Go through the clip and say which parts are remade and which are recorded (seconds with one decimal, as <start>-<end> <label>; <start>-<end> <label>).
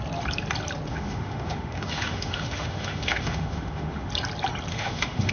0.0-0.9 recorded; 0.9-4.1 remade; 4.1-4.7 recorded; 4.7-5.3 remade